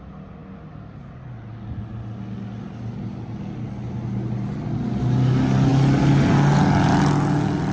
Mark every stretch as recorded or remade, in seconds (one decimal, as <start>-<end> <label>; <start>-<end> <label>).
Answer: 0.0-7.7 recorded